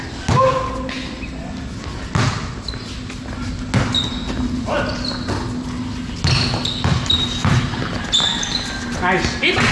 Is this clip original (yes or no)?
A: yes